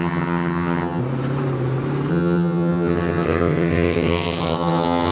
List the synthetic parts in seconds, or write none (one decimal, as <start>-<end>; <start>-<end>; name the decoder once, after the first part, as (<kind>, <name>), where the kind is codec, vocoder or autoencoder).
0.0-1.0 (vocoder, HiFi-GAN); 2.1-5.1